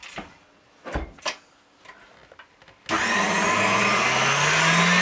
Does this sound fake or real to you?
real